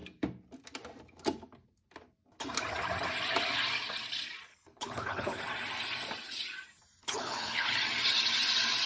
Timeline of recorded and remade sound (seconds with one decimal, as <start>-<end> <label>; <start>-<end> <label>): 0.0-4.5 recorded; 4.5-5.4 remade; 5.4-7.0 recorded; 7.0-7.7 remade; 7.7-8.9 recorded